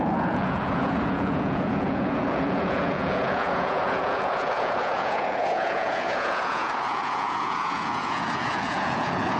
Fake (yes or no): yes